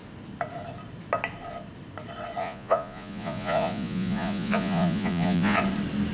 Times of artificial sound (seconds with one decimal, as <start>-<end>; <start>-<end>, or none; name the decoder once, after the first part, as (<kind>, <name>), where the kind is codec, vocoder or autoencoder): 2.4-5.6 (vocoder, Vocos)